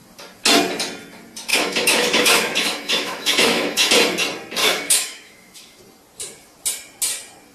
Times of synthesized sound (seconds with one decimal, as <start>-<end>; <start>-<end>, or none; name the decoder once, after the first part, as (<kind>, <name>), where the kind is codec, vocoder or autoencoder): 1.5-3.9 (autoencoder, DAC-VAE); 4.6-5.8